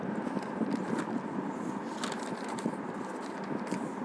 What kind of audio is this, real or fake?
real